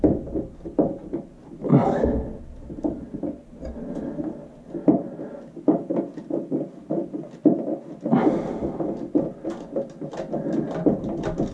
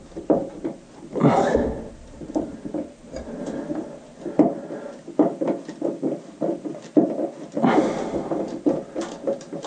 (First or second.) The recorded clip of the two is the first